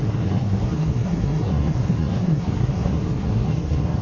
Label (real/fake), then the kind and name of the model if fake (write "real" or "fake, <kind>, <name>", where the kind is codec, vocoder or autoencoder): fake, codec, SNAC